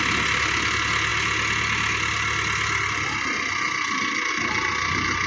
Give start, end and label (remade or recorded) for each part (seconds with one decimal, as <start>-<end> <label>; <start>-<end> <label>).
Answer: 0.0-5.3 recorded